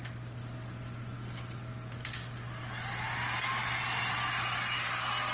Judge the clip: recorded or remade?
recorded